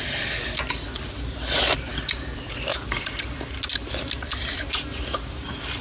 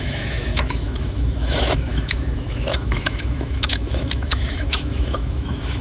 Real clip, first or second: first